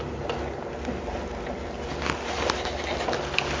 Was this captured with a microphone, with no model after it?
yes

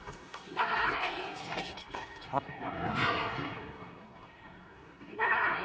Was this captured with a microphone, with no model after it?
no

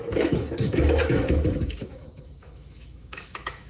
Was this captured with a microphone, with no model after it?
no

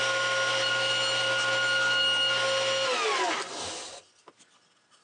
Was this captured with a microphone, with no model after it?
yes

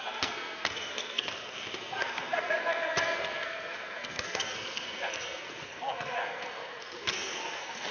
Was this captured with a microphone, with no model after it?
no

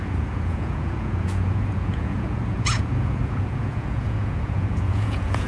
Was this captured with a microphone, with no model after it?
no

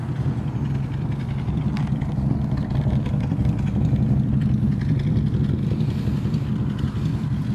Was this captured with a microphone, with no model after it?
yes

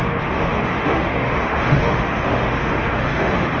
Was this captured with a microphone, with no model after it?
no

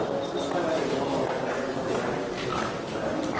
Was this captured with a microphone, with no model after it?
yes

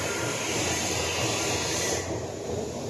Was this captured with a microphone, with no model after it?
no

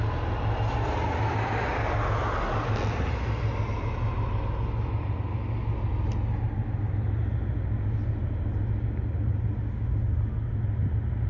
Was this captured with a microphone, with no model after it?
yes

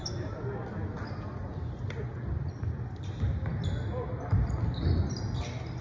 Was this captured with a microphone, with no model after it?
yes